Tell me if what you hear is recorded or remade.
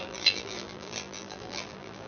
remade